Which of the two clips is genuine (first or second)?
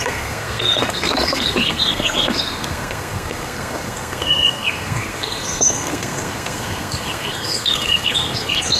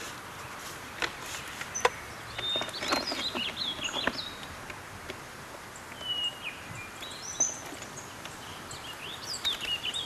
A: second